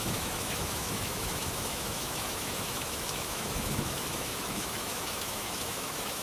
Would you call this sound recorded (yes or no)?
no